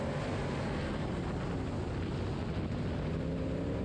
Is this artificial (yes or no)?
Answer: no